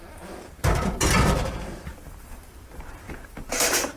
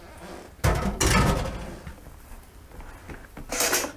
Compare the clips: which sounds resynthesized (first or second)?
first